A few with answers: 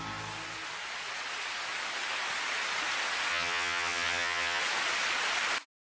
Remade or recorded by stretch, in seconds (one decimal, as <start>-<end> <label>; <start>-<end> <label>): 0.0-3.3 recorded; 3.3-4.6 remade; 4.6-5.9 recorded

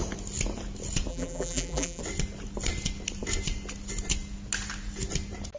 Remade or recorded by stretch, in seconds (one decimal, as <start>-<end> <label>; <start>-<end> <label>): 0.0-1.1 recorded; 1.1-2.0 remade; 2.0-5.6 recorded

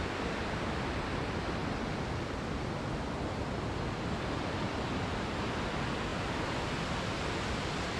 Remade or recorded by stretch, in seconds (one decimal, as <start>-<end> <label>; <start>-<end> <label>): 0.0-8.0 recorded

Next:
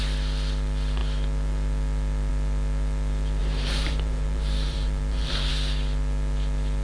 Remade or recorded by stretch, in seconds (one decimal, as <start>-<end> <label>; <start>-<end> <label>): 0.0-3.4 recorded; 3.4-5.5 remade; 5.5-6.8 recorded